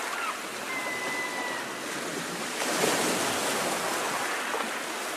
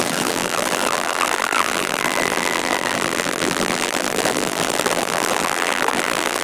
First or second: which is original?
first